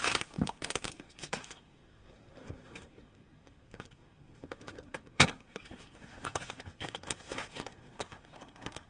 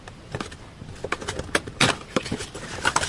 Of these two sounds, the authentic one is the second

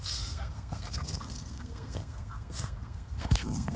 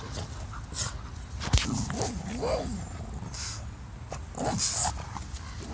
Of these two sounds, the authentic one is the second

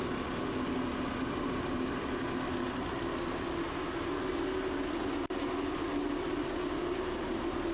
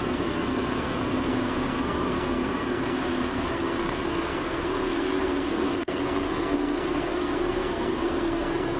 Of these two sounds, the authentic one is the first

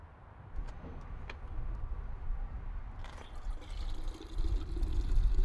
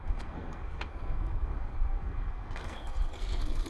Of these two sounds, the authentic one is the first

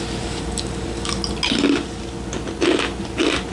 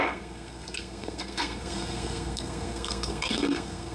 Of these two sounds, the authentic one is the first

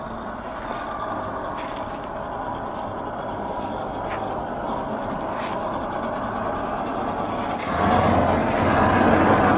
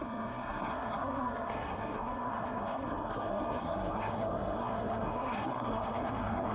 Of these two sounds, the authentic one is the first